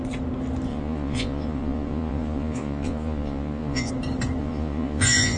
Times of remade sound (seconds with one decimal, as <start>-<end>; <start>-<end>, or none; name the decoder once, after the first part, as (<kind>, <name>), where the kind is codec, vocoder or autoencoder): 0.7-3.9 (vocoder, Vocos); 4.4-5.4